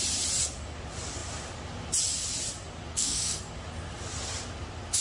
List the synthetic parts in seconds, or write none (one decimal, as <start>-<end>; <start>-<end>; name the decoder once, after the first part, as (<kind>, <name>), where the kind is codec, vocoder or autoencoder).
2.9-3.5 (codec, SNAC)